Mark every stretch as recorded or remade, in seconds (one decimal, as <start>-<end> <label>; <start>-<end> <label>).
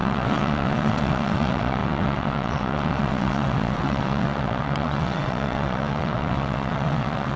0.0-7.4 remade